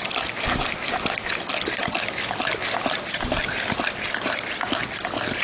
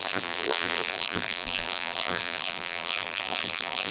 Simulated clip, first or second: second